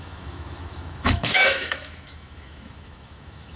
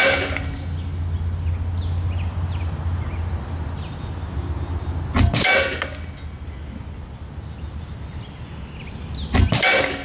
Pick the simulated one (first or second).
first